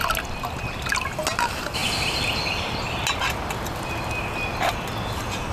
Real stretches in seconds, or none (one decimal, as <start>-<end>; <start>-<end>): 0.0-5.5